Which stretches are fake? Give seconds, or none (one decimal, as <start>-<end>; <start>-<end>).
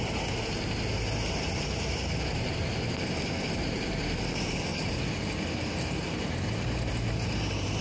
none